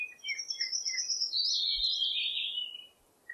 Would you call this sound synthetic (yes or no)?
no